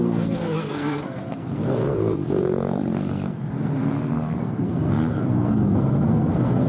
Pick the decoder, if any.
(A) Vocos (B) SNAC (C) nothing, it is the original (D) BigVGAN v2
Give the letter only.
B